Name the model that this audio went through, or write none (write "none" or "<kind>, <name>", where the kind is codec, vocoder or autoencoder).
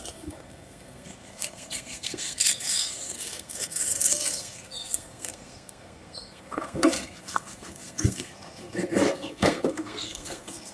codec, SNAC